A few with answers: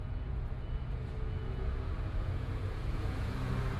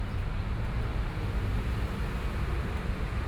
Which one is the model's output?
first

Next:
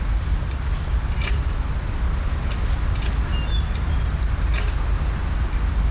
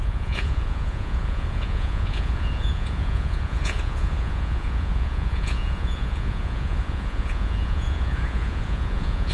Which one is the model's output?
second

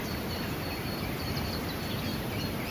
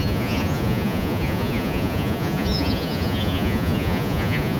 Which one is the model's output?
second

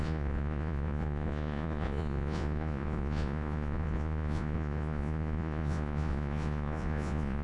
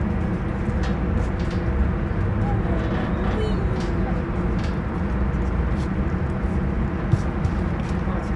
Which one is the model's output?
first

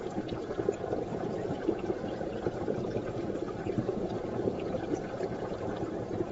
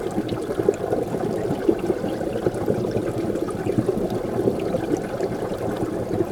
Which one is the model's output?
first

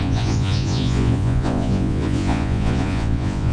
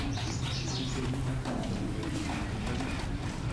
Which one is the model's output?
first